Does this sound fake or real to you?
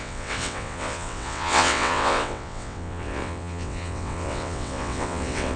fake